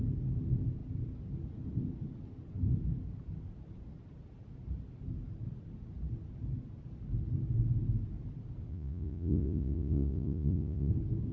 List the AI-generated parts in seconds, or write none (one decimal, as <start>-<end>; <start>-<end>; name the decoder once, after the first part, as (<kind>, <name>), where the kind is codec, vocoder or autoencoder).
8.7-10.9 (vocoder, Vocos)